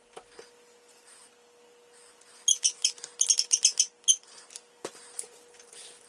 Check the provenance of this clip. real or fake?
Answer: real